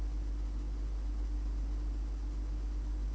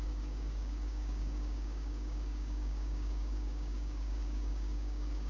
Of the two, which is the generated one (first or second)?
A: second